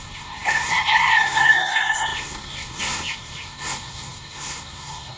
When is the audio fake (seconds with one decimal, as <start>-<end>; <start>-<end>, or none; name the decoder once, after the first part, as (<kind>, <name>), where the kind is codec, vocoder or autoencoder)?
0.0-5.2 (codec, SNAC)